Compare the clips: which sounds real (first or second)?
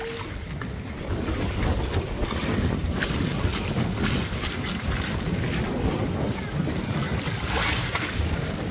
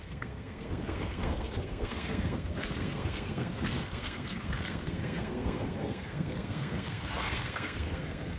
first